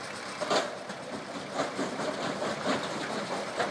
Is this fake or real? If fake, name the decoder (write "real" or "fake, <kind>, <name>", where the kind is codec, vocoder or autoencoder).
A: real